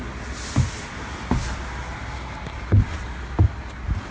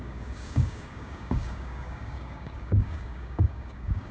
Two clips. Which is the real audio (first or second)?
first